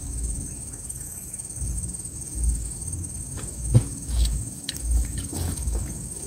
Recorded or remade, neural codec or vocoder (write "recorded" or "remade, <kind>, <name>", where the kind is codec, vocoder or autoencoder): remade, codec, DAC